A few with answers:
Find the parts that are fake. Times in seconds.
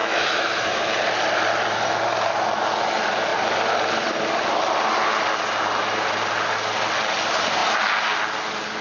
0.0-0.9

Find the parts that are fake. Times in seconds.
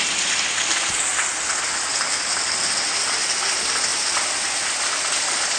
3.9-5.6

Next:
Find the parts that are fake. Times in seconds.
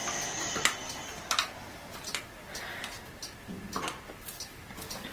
none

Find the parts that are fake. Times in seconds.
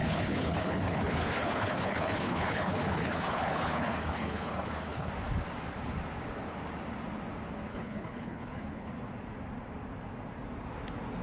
0.0-5.1; 7.7-8.9